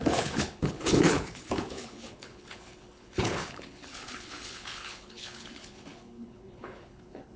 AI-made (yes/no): yes